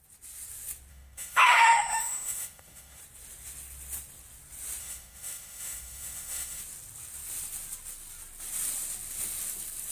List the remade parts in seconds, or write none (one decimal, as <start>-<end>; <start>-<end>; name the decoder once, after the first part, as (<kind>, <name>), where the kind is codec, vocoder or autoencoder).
0.9-3.0 (autoencoder, DAC-VAE); 4.8-6.6